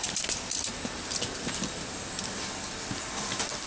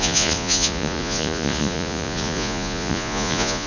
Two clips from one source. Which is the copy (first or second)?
second